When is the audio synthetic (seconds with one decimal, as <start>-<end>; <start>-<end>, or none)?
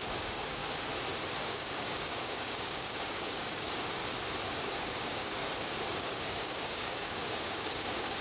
0.0-0.6; 1.4-4.0; 4.7-5.4; 6.0-8.2